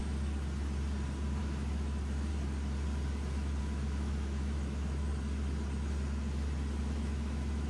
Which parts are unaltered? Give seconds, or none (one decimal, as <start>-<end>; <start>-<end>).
0.0-1.4; 2.3-3.6; 5.1-6.8